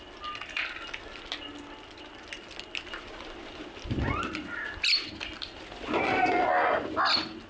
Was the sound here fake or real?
real